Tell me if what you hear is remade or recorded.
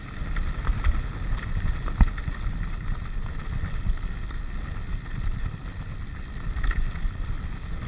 recorded